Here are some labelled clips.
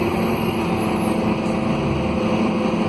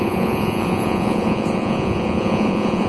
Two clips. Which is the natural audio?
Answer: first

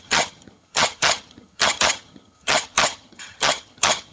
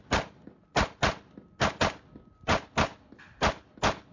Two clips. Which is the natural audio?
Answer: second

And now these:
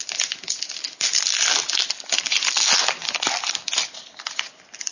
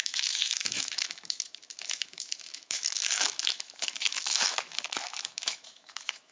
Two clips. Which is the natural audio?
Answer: first